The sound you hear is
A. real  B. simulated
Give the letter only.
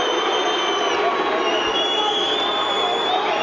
A